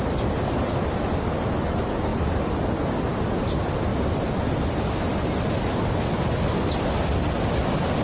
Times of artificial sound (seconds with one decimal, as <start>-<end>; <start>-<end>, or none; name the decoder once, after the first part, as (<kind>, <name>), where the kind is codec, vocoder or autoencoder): none